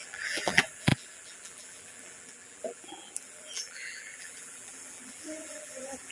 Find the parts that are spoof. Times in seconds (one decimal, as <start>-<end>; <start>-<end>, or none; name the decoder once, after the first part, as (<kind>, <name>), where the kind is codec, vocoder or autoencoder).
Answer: 0.0-6.1 (vocoder, BigVGAN v2)